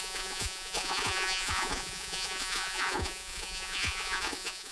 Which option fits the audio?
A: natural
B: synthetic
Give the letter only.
B